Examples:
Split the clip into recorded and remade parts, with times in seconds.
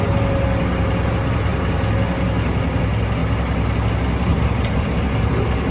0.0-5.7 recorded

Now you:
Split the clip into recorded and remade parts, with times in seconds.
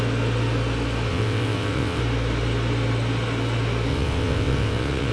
0.0-1.1 recorded; 1.1-2.0 remade; 2.0-3.9 recorded; 3.9-5.1 remade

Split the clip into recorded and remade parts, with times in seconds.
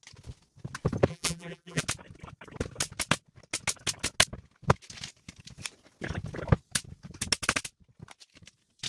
0.0-1.1 recorded; 1.1-1.8 remade; 1.8-8.9 recorded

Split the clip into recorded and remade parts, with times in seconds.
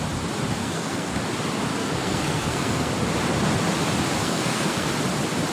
0.0-0.6 recorded; 0.6-1.2 remade; 1.2-1.7 recorded; 1.7-2.9 remade; 2.9-4.2 recorded; 4.2-4.9 remade; 4.9-5.5 recorded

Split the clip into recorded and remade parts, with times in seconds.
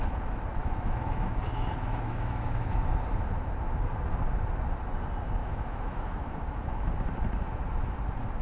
0.0-0.6 recorded; 0.6-2.8 remade; 2.8-5.4 recorded; 5.4-6.9 remade; 6.9-8.4 recorded